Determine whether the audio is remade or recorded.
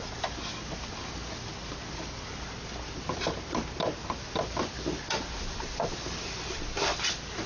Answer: recorded